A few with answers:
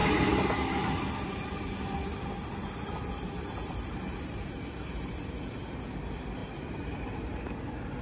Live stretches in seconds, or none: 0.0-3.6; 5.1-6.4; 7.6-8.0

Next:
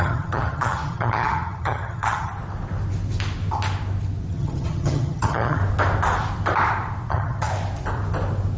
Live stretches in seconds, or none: 2.3-4.3; 5.6-7.1; 7.5-8.6